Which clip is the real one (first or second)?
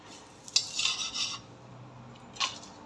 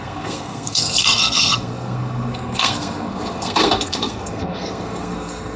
first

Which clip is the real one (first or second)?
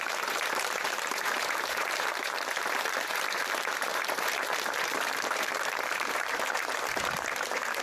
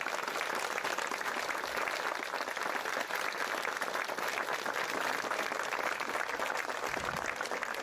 second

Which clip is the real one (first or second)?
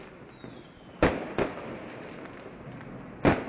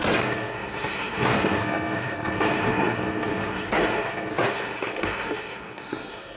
first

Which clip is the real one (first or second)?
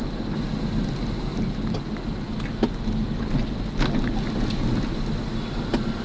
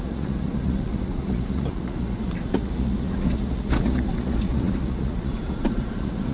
first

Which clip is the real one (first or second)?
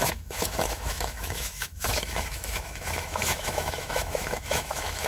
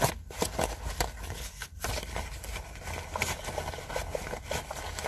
second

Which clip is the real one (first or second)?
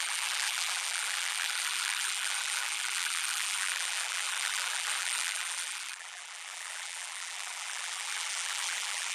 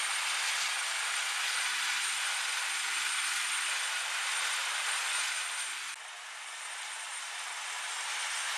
second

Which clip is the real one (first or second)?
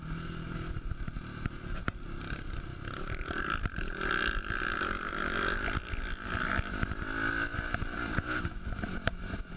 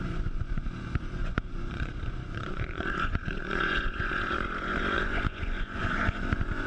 first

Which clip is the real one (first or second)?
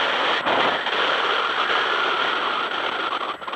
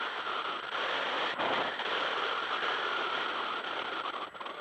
first